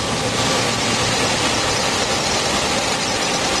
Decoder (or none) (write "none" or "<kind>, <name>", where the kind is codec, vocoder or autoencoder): none